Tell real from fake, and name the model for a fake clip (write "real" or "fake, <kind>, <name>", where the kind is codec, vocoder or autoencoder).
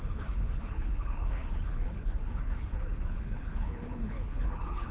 fake, codec, HILCodec